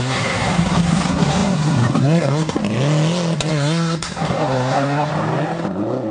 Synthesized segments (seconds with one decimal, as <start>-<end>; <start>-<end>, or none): 0.0-2.6; 3.5-5.1